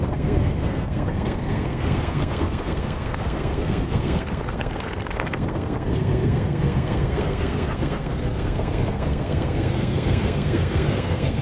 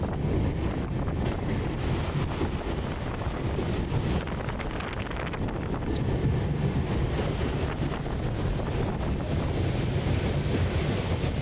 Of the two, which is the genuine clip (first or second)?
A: second